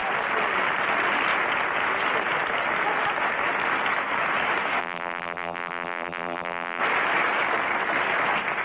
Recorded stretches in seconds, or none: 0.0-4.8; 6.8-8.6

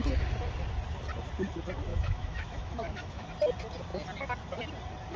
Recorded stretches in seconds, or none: 0.0-1.9; 3.3-5.2